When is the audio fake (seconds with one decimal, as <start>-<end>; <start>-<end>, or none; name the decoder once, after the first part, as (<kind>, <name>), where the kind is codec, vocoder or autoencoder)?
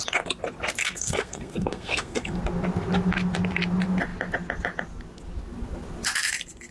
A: 0.8-2.4 (codec, SNAC)